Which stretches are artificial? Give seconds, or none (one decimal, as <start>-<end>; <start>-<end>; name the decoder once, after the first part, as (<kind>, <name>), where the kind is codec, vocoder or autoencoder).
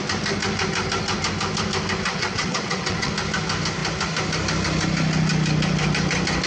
2.1-3.1 (vocoder, WaveNeXt)